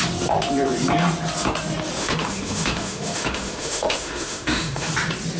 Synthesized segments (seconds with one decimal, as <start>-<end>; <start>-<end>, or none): 2.0-4.9